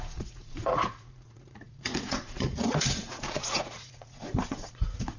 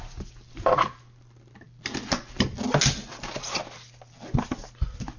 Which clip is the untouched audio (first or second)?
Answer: second